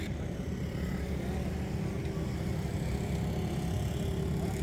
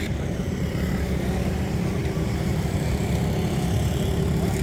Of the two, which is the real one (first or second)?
first